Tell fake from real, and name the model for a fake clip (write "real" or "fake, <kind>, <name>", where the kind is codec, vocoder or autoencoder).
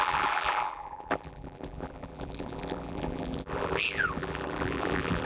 fake, vocoder, BigVGAN v2